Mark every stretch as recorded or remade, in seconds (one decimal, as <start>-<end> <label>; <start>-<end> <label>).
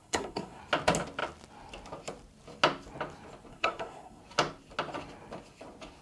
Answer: 0.0-0.6 remade; 0.6-3.5 recorded; 3.5-4.2 remade; 4.2-6.0 recorded